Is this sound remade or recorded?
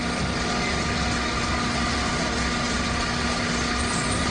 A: recorded